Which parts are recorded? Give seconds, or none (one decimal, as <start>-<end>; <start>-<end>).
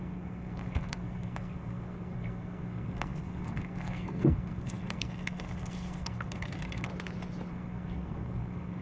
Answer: 6.9-7.5